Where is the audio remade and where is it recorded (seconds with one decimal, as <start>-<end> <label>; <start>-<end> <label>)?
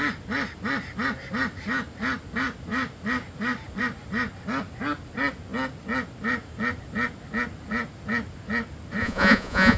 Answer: 0.0-9.0 recorded; 9.0-9.8 remade